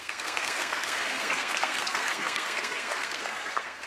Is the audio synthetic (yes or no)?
yes